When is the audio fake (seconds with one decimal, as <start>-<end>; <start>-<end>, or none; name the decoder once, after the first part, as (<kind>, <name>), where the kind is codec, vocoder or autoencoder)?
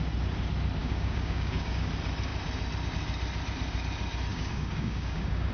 0.8-1.9 (codec, DAC); 4.3-5.5